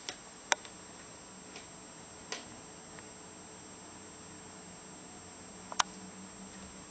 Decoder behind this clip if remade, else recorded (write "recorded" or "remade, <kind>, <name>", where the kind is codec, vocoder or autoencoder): recorded